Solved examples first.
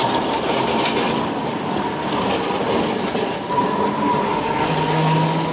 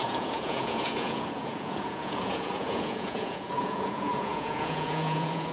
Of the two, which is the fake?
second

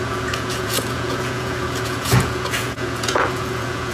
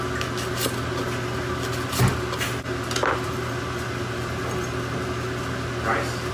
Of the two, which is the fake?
first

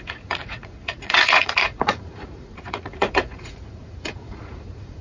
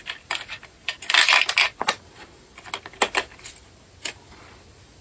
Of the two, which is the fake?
first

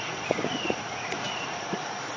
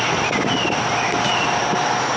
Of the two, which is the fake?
first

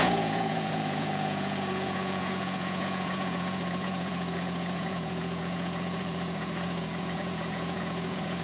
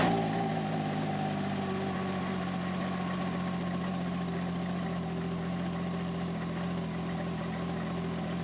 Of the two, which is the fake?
first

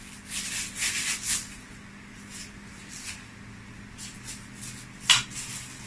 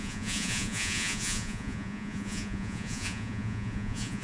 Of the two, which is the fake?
second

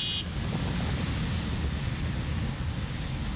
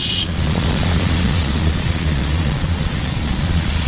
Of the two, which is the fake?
second